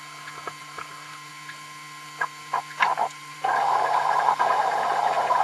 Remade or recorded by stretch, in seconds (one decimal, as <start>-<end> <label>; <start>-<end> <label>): 0.0-0.6 recorded; 0.6-1.3 remade; 1.3-2.9 recorded; 2.9-5.0 remade; 5.0-5.4 recorded